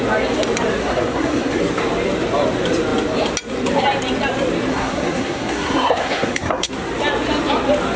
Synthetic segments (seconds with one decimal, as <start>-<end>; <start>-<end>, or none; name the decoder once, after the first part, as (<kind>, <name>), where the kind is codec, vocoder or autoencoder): 0.8-1.6 (codec, SNAC); 4.7-6.7